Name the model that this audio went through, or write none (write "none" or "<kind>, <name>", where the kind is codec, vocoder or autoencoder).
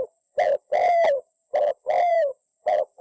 vocoder, BigVGAN v2